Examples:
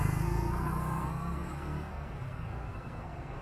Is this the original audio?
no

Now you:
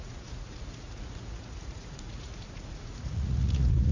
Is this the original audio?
no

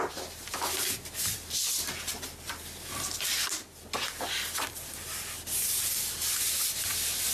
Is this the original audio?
yes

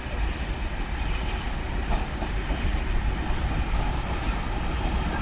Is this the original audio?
yes